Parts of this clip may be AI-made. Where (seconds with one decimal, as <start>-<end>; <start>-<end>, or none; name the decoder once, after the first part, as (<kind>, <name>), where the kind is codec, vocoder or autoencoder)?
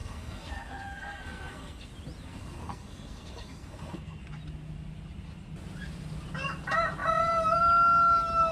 0.0-1.9 (codec, SNAC); 2.3-4.2